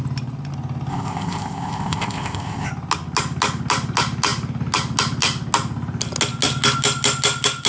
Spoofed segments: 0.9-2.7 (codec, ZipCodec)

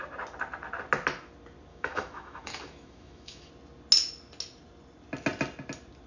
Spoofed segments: 1.7-3.5 (autoencoder, DAC-VAE)

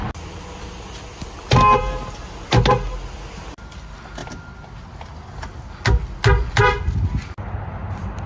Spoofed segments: none

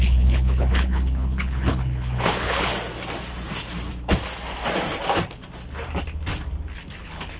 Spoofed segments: 0.0-2.7 (codec, HILCodec); 7.0-7.4

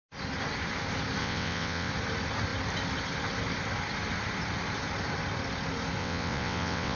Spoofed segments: 1.2-1.9 (vocoder, WaveNeXt); 6.0-7.0

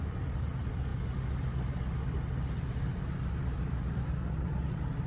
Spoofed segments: none